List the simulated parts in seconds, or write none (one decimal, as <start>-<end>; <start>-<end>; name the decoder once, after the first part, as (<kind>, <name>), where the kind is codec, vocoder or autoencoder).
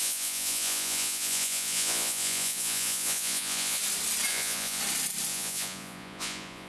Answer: 0.0-3.8 (vocoder, Vocos); 4.3-4.8; 5.3-6.7